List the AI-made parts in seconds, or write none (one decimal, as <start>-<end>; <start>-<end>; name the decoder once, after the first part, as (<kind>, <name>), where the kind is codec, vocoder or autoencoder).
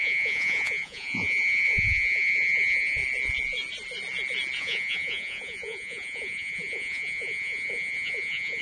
0.0-3.0 (vocoder, Vocos); 4.6-8.6